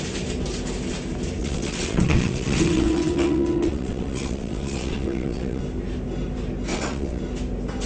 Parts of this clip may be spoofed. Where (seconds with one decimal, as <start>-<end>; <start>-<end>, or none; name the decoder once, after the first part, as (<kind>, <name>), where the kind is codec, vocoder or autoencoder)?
1.4-5.6 (vocoder, WaveNeXt); 6.7-7.2